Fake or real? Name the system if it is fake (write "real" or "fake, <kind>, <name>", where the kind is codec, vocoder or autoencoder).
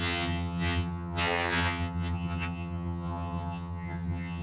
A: fake, vocoder, HiFi-GAN